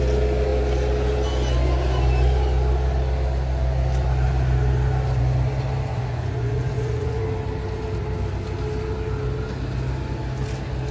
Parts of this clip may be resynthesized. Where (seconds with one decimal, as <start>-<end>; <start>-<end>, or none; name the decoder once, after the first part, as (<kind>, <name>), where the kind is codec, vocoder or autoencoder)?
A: 5.9-7.2 (vocoder, Vocos)